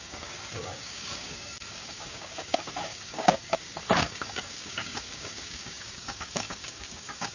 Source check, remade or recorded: remade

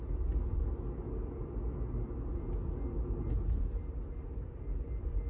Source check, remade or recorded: recorded